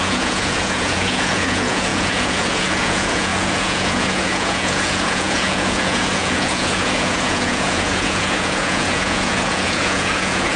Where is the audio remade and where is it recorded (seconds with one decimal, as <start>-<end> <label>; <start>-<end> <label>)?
0.0-10.6 remade